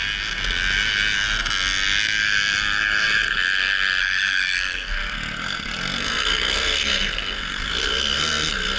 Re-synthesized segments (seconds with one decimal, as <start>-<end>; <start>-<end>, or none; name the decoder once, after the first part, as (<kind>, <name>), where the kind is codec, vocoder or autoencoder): 4.0-8.8 (codec, SNAC)